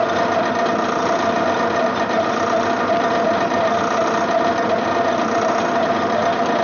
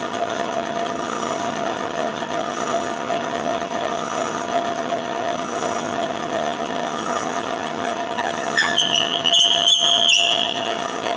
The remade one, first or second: second